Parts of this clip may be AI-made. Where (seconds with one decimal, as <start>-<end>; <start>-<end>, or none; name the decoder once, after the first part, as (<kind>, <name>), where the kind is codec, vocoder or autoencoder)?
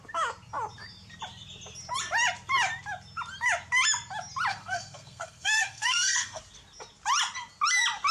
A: 4.5-6.4 (codec, SNAC)